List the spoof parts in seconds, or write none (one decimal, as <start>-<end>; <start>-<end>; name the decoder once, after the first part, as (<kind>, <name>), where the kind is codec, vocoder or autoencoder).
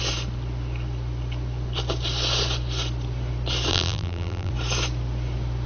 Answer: 3.7-4.5 (vocoder, BigVGAN v2)